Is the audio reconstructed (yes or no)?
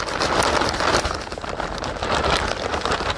no